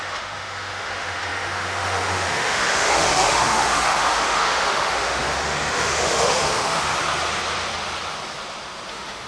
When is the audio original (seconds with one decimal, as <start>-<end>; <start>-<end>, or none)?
6.9-8.9